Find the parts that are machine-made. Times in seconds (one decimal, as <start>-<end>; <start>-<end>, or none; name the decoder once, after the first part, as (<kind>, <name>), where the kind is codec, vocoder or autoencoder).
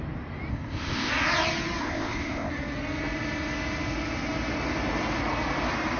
0.5-1.1 (codec, ZipCodec); 1.8-2.5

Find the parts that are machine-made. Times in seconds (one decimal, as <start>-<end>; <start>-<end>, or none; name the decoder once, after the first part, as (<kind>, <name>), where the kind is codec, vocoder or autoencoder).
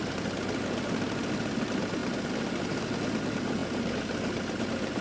none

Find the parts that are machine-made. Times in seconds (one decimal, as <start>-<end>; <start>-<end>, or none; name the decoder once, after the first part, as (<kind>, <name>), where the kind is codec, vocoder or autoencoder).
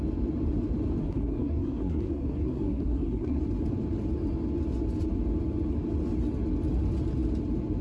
1.0-3.4 (codec, SNAC)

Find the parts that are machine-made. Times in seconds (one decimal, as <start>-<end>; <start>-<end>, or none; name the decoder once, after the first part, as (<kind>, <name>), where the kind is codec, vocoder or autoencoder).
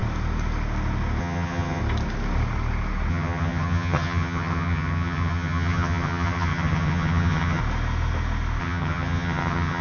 1.2-1.8 (vocoder, HiFi-GAN); 3.1-7.6; 8.6-9.8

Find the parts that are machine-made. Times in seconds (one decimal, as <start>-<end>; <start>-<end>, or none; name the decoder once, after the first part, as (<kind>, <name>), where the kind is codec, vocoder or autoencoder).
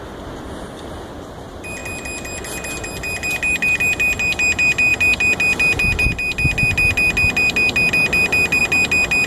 none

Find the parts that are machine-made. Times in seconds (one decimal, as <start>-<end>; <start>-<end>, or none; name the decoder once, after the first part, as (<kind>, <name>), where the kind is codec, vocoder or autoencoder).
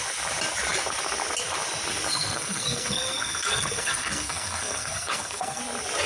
2.1-5.6 (codec, SNAC)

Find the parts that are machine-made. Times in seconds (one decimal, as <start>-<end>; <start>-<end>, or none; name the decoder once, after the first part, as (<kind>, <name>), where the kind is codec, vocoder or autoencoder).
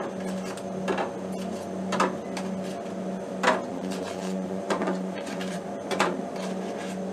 3.7-6.3 (vocoder, Vocos)